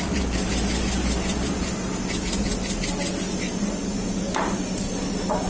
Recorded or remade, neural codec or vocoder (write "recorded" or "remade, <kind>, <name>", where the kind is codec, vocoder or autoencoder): recorded